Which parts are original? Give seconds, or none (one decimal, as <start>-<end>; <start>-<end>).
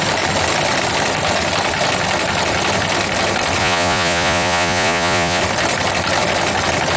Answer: 0.0-3.6; 5.4-7.0